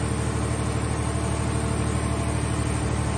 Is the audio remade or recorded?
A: recorded